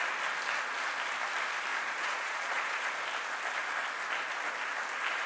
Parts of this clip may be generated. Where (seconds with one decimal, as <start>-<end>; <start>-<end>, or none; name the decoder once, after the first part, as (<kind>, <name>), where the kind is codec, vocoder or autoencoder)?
1.7-2.8 (vocoder, Vocos)